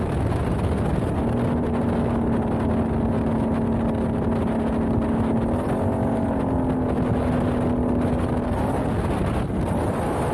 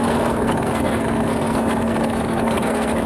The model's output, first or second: second